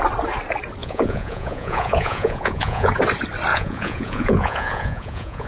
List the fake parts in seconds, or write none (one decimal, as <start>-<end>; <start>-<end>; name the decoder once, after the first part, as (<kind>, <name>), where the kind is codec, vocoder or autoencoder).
0.8-2.9 (vocoder, Vocos); 3.5-5.5